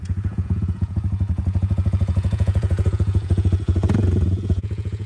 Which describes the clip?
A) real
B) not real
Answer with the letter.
B